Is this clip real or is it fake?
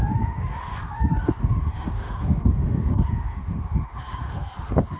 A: fake